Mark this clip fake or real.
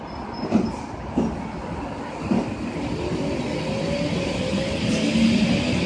real